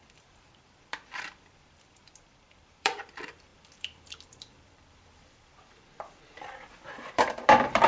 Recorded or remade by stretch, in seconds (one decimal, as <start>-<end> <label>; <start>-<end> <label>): 0.0-7.9 remade